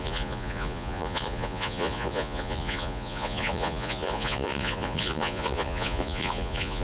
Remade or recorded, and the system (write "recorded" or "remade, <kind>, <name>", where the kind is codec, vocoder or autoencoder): remade, vocoder, Vocos